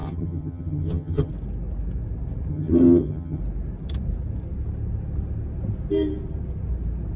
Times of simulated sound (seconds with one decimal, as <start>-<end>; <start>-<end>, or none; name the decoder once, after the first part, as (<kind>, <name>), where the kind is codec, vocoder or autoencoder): 0.0-1.3 (vocoder, HiFi-GAN); 2.5-3.4